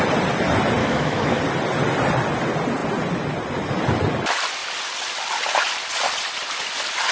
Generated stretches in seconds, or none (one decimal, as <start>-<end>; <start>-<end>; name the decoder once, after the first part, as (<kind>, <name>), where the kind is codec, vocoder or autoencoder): 0.8-1.4 (autoencoder, DAC-VAE)